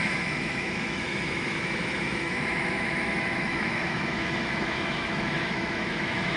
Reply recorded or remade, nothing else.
remade